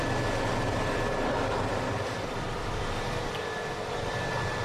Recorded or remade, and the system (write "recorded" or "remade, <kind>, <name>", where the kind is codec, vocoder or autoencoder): remade, vocoder, BigVGAN v2